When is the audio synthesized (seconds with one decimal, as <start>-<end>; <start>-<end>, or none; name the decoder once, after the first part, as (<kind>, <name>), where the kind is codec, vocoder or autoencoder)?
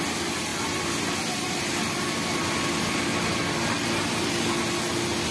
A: none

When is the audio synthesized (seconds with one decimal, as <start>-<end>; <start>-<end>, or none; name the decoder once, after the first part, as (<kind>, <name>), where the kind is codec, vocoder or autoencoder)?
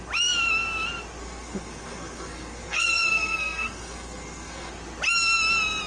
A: 1.2-4.7 (codec, SNAC)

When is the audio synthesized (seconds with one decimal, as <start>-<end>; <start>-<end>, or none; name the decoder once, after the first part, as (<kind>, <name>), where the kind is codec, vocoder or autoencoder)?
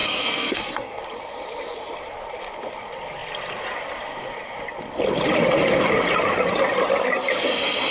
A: 0.0-1.0 (codec, SNAC)